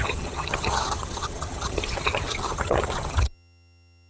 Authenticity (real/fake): fake